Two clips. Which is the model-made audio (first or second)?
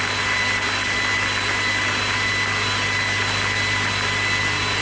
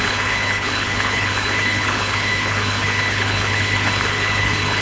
second